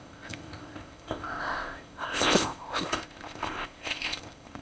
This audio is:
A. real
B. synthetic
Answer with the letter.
B